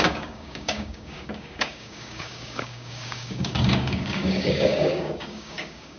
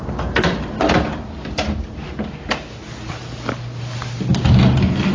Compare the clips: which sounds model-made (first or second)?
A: first